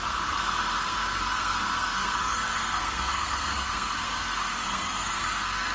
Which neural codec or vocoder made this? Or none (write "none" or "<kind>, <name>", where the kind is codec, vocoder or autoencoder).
codec, SNAC